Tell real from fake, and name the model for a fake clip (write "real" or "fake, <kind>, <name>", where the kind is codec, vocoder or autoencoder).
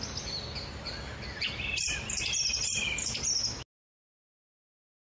real